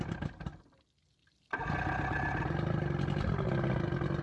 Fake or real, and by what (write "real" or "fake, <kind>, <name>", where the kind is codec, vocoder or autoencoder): real